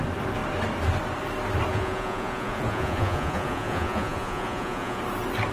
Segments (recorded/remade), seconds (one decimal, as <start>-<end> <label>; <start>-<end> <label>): 0.0-1.7 recorded; 1.7-5.0 remade; 5.0-5.5 recorded